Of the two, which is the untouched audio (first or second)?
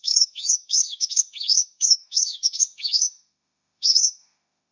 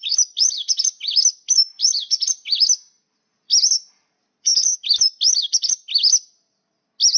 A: second